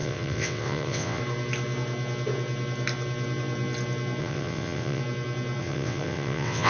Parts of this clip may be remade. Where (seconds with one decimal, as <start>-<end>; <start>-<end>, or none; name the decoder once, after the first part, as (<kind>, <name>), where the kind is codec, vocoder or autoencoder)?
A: 0.0-1.2 (vocoder, WaveNeXt); 4.2-5.0; 5.6-6.7